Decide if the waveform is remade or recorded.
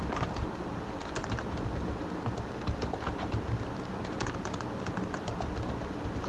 recorded